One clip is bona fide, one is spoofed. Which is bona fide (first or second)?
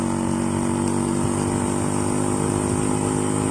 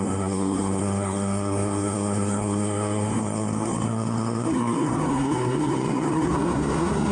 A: first